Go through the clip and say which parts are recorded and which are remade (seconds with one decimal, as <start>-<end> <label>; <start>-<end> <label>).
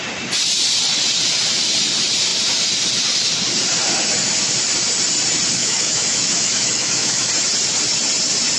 0.0-5.6 recorded; 5.6-7.3 remade; 7.3-8.6 recorded